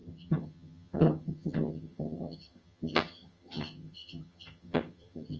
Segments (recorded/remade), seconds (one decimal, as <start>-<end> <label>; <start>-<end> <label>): 0.0-5.4 remade